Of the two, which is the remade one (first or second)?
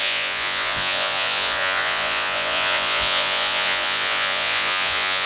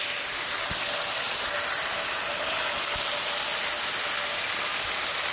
first